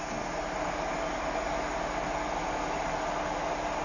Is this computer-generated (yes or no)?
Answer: no